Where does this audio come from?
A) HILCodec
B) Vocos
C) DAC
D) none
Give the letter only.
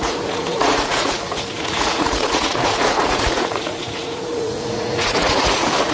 B